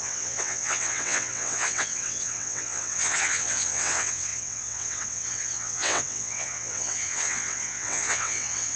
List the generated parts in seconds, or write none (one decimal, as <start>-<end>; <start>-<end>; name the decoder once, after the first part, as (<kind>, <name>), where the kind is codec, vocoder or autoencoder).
0.0-8.8 (vocoder, WaveNeXt)